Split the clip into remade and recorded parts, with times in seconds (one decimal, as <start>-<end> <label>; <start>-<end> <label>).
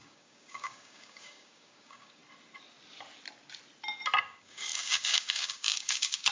0.0-2.2 remade; 2.2-4.2 recorded; 4.2-6.3 remade